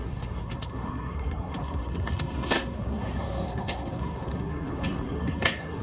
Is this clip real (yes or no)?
no